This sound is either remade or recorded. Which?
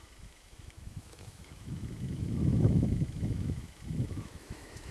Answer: remade